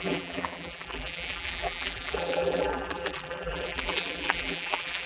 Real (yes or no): no